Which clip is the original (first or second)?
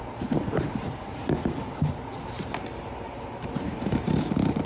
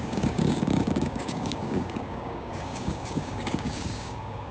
first